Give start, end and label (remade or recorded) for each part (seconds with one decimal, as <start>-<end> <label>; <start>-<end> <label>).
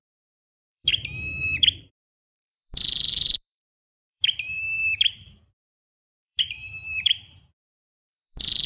0.0-0.9 remade; 0.9-1.4 recorded; 1.4-8.7 remade